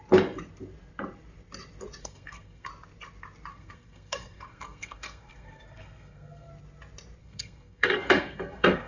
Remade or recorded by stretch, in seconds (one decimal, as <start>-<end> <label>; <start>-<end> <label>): 0.0-2.0 recorded; 2.0-2.7 remade; 2.7-3.5 recorded; 3.5-6.5 remade; 6.5-7.2 recorded; 7.2-8.9 remade